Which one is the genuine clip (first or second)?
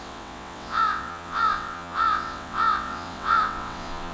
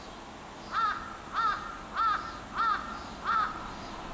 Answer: second